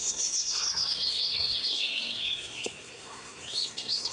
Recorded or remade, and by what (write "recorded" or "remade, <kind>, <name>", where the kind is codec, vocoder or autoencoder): remade, codec, SNAC